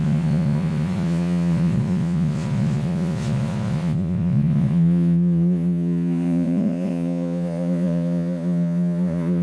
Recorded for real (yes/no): no